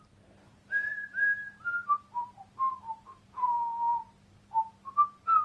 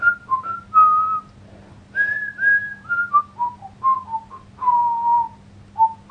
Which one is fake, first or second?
first